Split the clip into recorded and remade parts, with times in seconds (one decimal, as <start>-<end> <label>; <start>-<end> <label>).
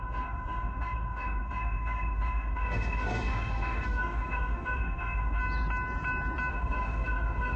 0.0-5.4 remade; 5.4-6.5 recorded; 6.5-7.6 remade